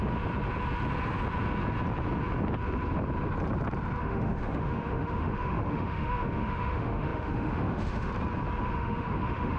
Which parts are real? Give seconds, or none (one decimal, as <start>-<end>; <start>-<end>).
0.0-4.0; 8.1-8.6